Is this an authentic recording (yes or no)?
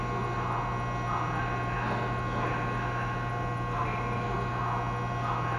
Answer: yes